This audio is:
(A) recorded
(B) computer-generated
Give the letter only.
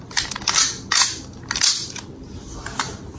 A